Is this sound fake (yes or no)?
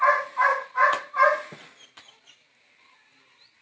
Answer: no